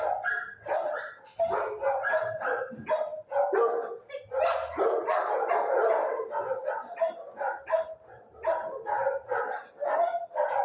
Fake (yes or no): no